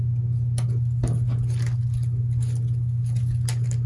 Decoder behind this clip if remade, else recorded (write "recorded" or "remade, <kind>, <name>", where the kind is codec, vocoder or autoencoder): recorded